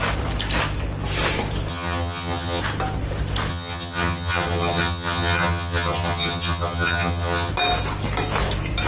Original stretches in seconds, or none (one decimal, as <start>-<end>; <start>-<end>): 0.0-1.7; 2.6-3.5; 7.5-8.9